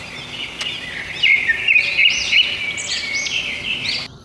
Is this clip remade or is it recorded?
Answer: recorded